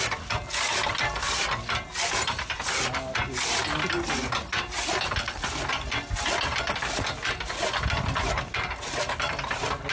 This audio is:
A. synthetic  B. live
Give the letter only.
B